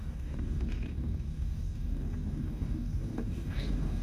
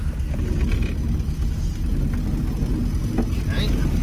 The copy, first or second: first